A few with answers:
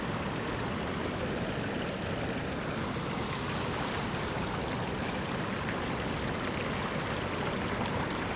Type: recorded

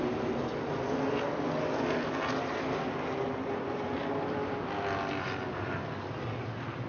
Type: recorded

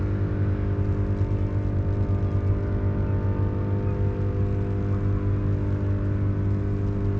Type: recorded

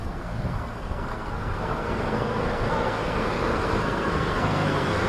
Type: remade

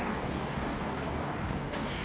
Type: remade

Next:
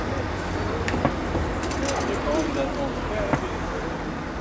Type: recorded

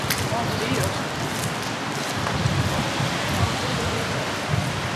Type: recorded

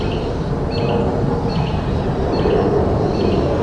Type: recorded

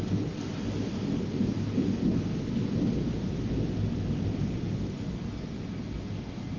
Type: recorded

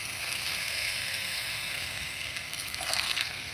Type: remade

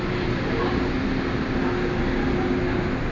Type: recorded